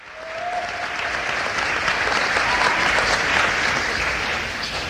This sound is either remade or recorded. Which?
recorded